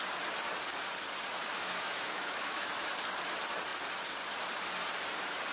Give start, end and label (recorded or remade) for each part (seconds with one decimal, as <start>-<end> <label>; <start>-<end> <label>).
0.0-1.4 recorded; 1.4-2.9 remade; 2.9-5.5 recorded